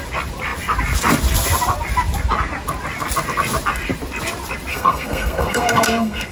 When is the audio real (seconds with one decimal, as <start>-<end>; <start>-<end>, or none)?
0.0-4.7